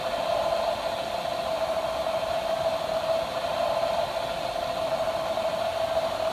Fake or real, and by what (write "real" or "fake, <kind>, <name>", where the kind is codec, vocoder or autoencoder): real